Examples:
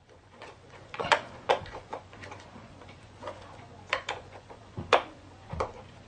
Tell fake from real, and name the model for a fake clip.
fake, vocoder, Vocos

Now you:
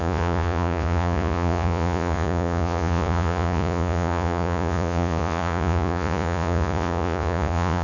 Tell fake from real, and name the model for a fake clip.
fake, vocoder, Vocos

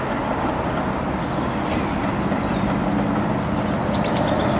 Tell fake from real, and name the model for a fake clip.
real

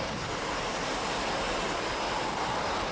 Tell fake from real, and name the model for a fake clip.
real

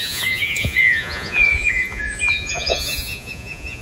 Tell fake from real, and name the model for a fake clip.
fake, vocoder, Vocos